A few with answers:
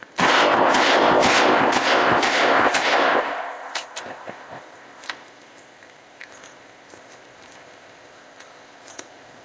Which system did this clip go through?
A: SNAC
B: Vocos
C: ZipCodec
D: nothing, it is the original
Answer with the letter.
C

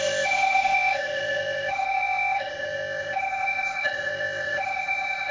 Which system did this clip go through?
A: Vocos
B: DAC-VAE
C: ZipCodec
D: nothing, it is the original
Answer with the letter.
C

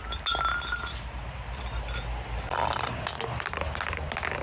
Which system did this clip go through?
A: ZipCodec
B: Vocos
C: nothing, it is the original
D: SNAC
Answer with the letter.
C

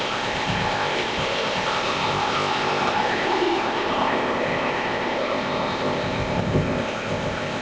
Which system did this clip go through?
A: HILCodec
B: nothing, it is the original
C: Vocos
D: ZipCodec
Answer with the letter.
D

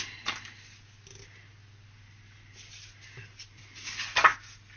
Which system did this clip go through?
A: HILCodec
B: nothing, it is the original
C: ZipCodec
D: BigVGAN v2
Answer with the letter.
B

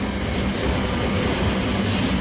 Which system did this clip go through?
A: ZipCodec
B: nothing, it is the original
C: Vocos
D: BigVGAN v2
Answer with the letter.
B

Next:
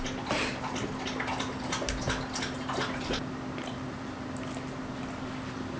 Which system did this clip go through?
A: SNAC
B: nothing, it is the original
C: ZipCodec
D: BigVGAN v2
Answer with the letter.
B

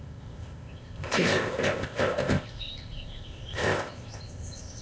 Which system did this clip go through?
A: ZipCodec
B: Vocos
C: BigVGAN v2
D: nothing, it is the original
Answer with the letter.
A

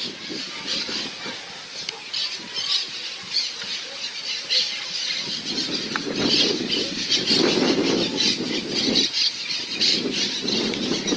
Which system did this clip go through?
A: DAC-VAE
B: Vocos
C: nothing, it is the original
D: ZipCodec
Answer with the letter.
C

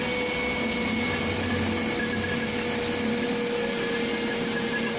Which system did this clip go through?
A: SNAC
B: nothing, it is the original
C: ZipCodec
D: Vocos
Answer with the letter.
B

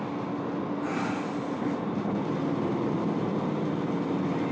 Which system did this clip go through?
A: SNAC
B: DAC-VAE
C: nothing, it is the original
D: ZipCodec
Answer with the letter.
C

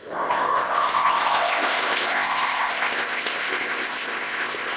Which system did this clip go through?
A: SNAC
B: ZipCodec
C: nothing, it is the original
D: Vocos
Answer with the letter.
B